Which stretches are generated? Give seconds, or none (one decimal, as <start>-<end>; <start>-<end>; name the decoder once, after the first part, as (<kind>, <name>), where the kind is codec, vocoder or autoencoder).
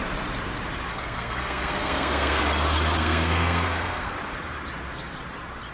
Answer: 0.9-2.4 (codec, SNAC); 3.0-4.1